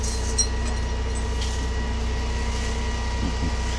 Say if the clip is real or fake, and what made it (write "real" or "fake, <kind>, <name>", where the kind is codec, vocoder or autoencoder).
real